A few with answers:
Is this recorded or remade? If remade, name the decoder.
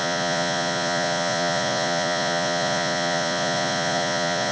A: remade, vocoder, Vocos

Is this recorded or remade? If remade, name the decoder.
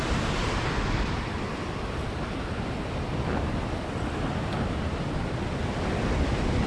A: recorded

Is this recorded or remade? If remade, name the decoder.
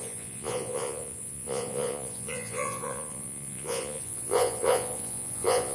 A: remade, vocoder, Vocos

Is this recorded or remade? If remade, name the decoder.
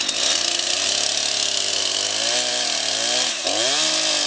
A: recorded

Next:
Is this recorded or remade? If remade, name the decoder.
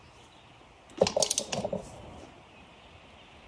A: recorded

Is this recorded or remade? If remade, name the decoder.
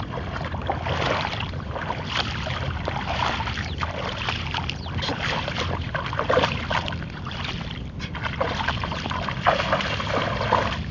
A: remade, vocoder, BigVGAN v2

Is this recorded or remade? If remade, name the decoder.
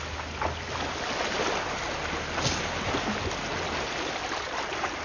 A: recorded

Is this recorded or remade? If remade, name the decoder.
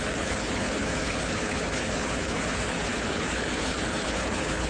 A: remade, codec, HILCodec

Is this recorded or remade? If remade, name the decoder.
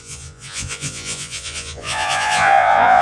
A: remade, vocoder, Vocos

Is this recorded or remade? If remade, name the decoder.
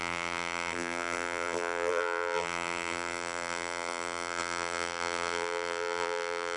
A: remade, vocoder, BigVGAN v2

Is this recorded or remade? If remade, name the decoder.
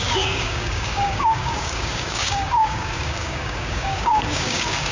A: remade, codec, DAC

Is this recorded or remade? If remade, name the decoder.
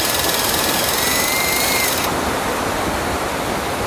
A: recorded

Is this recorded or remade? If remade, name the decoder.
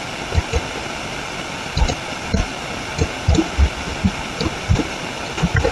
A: recorded